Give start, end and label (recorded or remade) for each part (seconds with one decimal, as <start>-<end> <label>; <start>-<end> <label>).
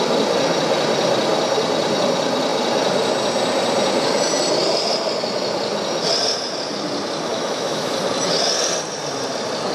0.0-7.3 recorded; 7.3-7.9 remade; 7.9-9.7 recorded